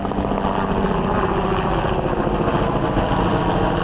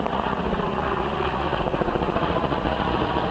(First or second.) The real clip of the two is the first